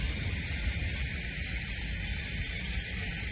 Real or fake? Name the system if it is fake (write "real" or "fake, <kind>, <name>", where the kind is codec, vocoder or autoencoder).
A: real